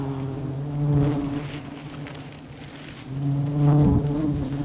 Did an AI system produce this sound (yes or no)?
no